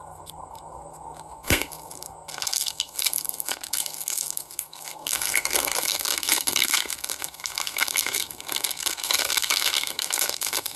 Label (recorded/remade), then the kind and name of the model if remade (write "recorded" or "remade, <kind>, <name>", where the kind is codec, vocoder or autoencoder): remade, codec, SNAC